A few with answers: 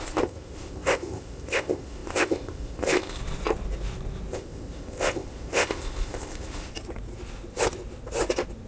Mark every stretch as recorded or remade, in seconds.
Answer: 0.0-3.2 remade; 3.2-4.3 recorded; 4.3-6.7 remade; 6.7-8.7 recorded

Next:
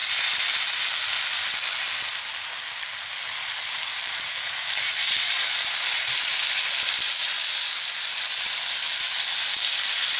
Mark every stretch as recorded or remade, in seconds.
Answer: 0.0-10.2 recorded

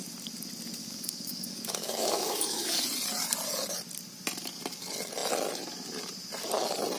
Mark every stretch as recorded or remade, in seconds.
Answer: 0.0-0.8 recorded; 0.8-2.8 remade; 2.8-7.0 recorded